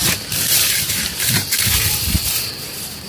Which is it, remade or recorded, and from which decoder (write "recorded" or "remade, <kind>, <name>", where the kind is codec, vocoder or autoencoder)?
remade, vocoder, BigVGAN v2